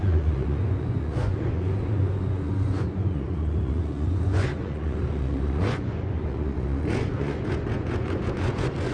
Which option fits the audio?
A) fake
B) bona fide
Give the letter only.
A